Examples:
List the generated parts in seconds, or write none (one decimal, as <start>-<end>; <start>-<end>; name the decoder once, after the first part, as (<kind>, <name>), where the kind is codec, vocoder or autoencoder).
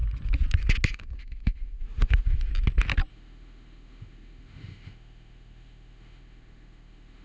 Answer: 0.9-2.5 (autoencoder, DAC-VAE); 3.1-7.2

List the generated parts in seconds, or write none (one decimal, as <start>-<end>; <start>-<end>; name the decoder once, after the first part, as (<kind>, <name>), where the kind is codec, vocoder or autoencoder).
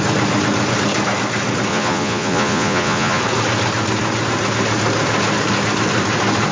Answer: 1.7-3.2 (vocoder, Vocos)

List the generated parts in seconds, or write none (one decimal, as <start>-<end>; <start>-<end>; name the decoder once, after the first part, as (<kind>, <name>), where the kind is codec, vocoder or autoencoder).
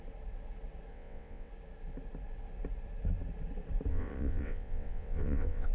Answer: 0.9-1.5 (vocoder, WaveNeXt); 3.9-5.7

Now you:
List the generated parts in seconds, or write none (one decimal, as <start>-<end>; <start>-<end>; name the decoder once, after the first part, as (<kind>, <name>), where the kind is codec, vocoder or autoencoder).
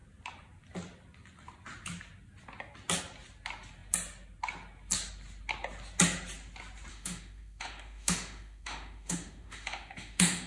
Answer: 6.9-10.5 (autoencoder, DAC-VAE)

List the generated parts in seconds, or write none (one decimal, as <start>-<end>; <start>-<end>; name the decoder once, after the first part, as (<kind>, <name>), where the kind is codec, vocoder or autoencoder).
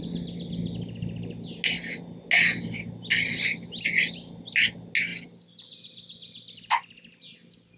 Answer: none